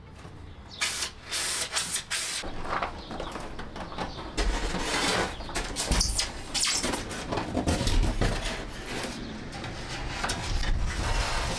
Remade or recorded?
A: recorded